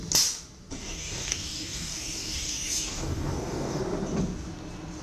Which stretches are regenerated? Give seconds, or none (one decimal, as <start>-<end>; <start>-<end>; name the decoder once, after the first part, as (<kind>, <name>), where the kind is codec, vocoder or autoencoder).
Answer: 0.8-3.8 (codec, DAC)

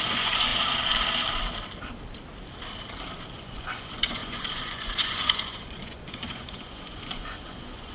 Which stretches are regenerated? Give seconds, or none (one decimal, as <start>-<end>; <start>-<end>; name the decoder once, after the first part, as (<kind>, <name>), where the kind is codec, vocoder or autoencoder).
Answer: 0.0-0.5 (vocoder, Vocos); 3.3-7.9

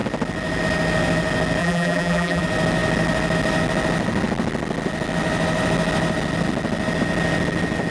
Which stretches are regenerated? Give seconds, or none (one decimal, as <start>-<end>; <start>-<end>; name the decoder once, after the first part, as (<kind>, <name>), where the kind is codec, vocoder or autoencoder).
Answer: 1.6-2.4 (vocoder, BigVGAN v2)

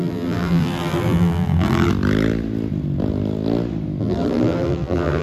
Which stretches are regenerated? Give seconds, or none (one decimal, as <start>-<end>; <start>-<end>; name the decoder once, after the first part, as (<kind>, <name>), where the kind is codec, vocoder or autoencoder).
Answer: 0.0-1.9 (vocoder, BigVGAN v2); 4.0-5.2

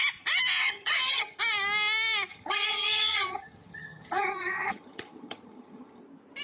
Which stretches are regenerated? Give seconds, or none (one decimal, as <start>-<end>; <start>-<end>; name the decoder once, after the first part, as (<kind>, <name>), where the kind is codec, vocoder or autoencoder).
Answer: 0.6-1.4 (vocoder, HiFi-GAN); 2.3-6.0